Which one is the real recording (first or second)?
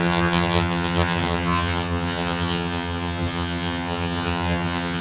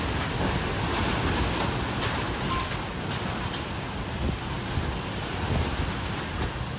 second